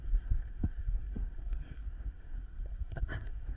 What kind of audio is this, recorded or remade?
remade